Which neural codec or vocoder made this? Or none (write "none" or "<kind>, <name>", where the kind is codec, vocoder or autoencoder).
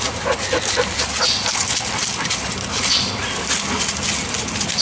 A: none